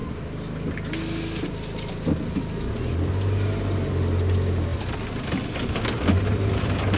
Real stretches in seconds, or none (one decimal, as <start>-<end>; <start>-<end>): 0.0-7.0